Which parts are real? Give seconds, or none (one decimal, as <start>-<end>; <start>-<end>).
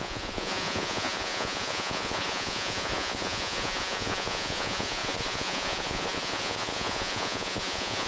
none